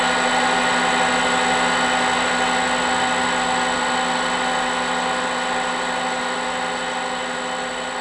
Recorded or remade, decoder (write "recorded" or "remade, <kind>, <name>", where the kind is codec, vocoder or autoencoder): recorded